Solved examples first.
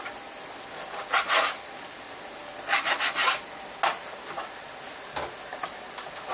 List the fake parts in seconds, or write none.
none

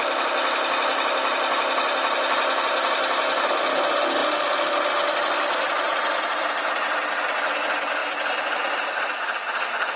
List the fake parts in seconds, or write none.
none